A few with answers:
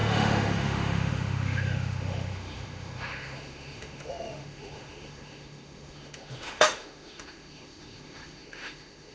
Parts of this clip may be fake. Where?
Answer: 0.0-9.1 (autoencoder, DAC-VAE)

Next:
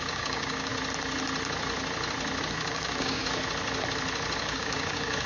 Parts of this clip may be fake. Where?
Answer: 0.0-0.7 (codec, DAC); 2.4-3.2; 4.4-5.3

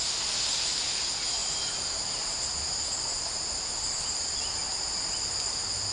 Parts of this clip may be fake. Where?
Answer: none

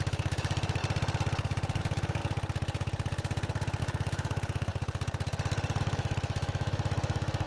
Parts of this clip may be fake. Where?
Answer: 0.0-0.8 (autoencoder, DAC-VAE); 1.8-2.2; 3.8-4.7; 5.8-7.5

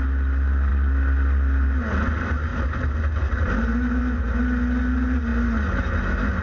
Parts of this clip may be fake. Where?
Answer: 0.7-1.9 (vocoder, BigVGAN v2); 2.5-4.0

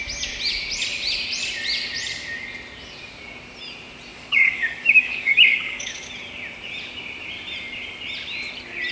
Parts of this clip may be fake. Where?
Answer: 4.1-6.1 (codec, DAC)

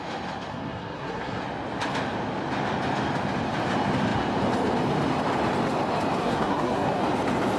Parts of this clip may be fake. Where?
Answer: 0.5-1.4 (codec, SNAC); 6.2-7.0

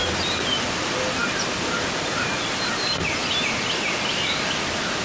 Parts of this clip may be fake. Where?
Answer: 0.0-0.7 (vocoder, BigVGAN v2); 1.2-2.7